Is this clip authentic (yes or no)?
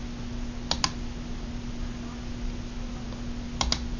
yes